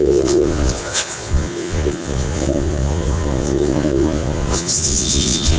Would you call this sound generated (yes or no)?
yes